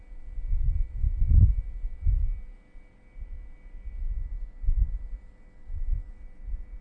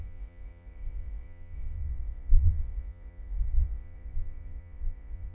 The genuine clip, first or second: first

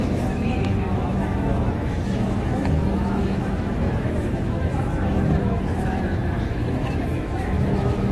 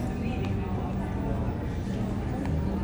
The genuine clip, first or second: second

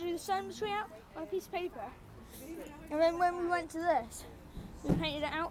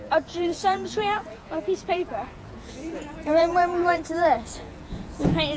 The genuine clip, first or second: first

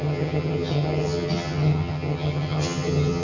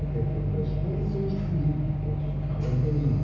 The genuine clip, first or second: second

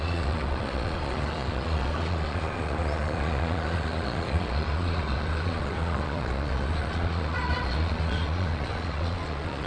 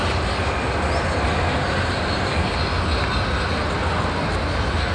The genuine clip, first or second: second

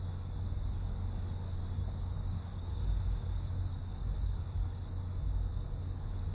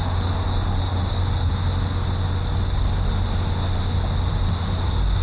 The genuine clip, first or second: second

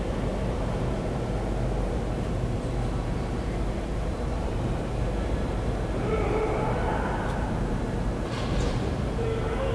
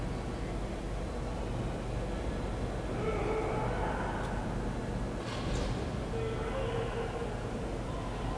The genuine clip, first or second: second